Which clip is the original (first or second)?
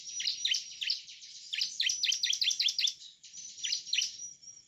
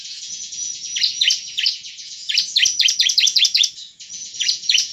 first